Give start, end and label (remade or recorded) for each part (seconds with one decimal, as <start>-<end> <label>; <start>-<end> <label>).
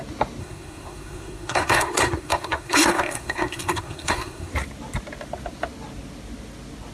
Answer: 0.0-0.4 recorded; 0.4-4.5 remade; 4.5-6.9 recorded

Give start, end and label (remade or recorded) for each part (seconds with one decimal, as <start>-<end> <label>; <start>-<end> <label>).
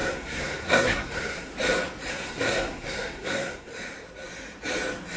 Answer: 0.0-1.5 remade; 1.5-2.1 recorded; 2.1-3.7 remade; 3.7-5.2 recorded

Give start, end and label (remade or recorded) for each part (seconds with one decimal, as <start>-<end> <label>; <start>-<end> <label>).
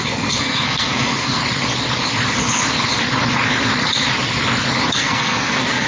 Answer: 0.0-1.4 remade; 1.4-4.9 recorded; 4.9-5.9 remade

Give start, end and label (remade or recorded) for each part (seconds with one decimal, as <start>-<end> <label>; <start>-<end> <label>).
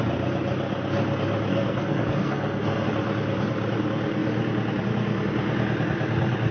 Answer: 0.0-1.5 recorded; 1.5-2.9 remade; 2.9-6.5 recorded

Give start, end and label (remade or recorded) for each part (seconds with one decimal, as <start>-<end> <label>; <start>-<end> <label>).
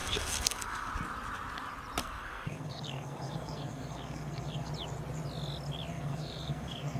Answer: 0.0-0.9 remade; 0.9-2.0 recorded; 2.0-4.7 remade; 4.7-5.9 recorded; 5.9-7.0 remade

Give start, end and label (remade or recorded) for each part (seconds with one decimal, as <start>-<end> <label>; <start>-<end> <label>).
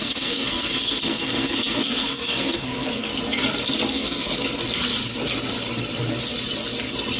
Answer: 0.0-3.1 remade; 3.1-3.9 recorded; 3.9-4.3 remade; 4.3-7.2 recorded